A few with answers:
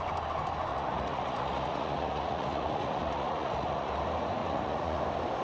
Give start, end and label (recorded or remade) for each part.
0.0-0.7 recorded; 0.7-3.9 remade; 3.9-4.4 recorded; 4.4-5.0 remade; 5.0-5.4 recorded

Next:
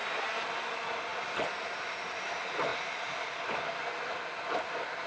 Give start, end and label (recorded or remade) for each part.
0.0-5.1 recorded

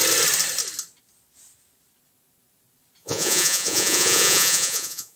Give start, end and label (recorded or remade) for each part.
0.0-3.0 recorded; 3.0-5.2 remade

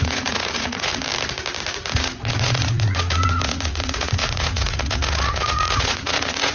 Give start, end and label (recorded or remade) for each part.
0.0-0.9 remade; 0.9-1.9 recorded; 1.9-6.5 remade

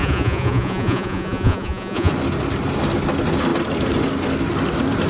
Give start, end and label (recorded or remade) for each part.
0.0-2.1 remade; 2.1-5.1 recorded

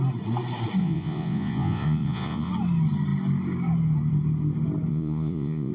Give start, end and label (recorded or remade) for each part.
0.0-0.8 recorded; 0.8-2.5 remade; 2.5-4.9 recorded; 4.9-5.7 remade

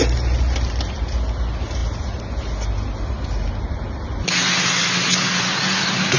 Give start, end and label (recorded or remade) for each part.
0.0-6.2 recorded

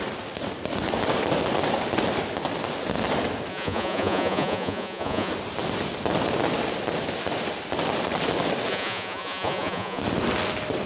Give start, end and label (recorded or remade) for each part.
0.0-3.5 recorded; 3.5-5.3 remade; 5.3-8.7 recorded; 8.7-10.0 remade; 10.0-10.9 recorded